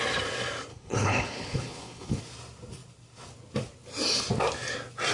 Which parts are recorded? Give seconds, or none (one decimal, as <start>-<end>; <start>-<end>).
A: 0.0-0.7; 2.2-5.1